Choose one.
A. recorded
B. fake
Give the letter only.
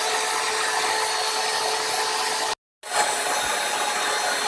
A